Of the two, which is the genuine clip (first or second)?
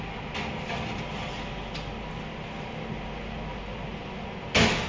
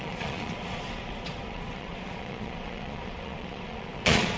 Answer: first